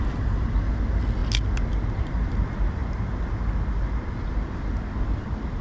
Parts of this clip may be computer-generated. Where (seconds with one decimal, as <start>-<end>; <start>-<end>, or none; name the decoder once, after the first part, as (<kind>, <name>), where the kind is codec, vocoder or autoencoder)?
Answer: none